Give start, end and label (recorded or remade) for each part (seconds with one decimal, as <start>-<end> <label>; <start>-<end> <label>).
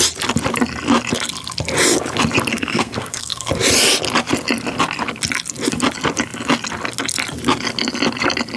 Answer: 0.0-2.5 recorded; 2.5-3.5 remade; 3.5-8.6 recorded